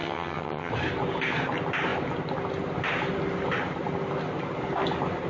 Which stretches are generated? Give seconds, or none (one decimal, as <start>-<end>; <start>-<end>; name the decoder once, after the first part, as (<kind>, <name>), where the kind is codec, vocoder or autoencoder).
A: 0.0-0.7 (vocoder, HiFi-GAN)